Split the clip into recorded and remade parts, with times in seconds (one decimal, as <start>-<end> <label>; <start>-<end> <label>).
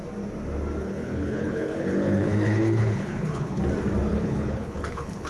0.0-0.8 recorded; 0.8-3.6 remade; 3.6-4.1 recorded; 4.1-5.3 remade